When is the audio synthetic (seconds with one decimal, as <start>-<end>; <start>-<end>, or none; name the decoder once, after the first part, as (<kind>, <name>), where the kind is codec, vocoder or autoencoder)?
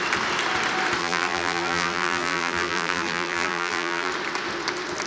1.0-4.1 (vocoder, BigVGAN v2)